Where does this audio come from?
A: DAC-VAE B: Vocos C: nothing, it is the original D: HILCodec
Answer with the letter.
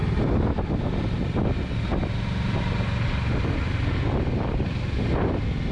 C